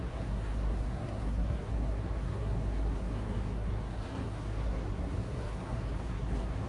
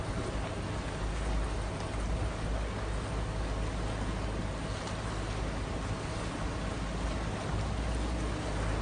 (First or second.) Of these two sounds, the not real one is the first